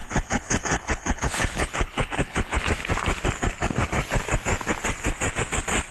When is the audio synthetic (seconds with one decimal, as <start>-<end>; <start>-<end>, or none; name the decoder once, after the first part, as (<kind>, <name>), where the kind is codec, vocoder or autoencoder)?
0.0-2.6 (codec, HILCodec)